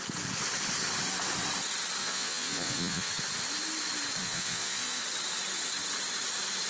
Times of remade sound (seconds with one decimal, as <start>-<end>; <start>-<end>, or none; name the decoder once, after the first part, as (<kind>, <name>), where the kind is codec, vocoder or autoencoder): 2.0-3.1 (vocoder, Vocos); 4.2-5.0